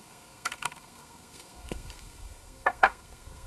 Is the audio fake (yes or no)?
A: yes